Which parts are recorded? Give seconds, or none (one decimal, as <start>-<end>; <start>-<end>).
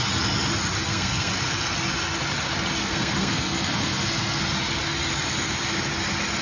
0.0-0.8; 1.3-2.8; 4.4-6.4